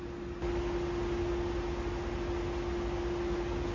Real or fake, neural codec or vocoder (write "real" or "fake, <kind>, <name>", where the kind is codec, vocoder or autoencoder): real